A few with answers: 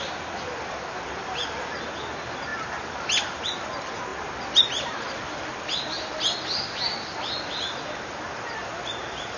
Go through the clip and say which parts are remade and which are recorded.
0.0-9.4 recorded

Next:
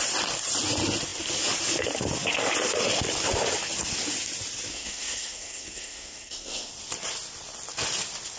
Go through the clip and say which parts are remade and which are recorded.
0.0-4.7 recorded; 4.7-6.7 remade; 6.7-8.4 recorded

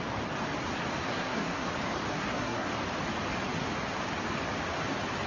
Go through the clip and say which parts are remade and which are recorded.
0.0-1.0 recorded; 1.0-1.7 remade; 1.7-2.1 recorded; 2.1-2.7 remade; 2.7-5.3 recorded

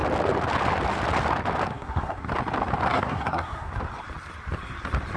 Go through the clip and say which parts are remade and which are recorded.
0.0-1.7 recorded; 1.7-2.3 remade; 2.3-2.9 recorded; 2.9-3.7 remade; 3.7-5.2 recorded

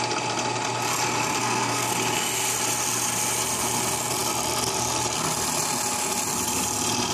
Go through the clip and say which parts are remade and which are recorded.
0.0-1.4 recorded; 1.4-1.9 remade; 1.9-7.1 recorded

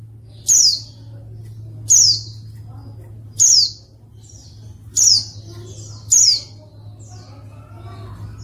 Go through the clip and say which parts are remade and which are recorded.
0.0-8.4 recorded

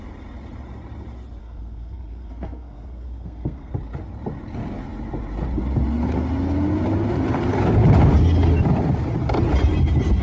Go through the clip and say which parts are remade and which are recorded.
0.0-1.4 recorded; 1.4-3.7 remade; 3.7-10.2 recorded